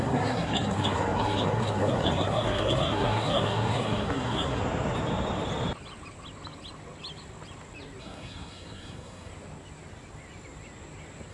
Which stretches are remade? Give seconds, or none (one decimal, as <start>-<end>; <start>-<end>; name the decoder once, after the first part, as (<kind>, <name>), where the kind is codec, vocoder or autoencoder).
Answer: 0.0-4.6 (codec, SNAC); 8.0-9.3